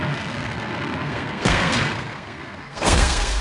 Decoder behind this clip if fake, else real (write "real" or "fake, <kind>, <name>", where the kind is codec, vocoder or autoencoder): fake, codec, SNAC